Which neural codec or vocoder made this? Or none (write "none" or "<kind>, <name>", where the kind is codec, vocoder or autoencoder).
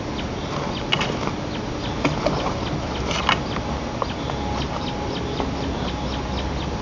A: none